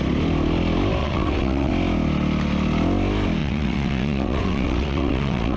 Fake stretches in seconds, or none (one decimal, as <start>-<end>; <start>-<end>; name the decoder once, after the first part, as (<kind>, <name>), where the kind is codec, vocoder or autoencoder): 1.0-1.7 (vocoder, WaveNeXt); 3.4-5.6